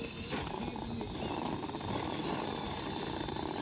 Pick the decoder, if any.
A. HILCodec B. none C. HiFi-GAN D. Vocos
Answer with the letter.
B